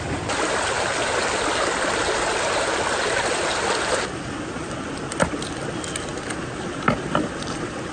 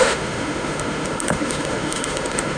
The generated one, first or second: second